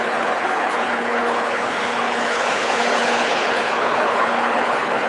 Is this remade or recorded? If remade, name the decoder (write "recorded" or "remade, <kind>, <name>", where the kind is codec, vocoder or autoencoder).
remade, codec, HILCodec